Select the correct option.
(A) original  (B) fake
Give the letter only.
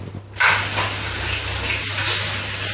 A